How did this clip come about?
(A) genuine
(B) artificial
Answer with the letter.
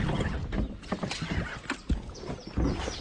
A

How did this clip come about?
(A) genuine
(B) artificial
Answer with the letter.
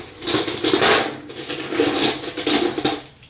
A